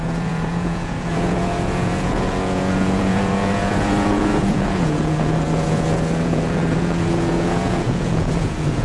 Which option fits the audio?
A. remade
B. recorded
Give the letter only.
A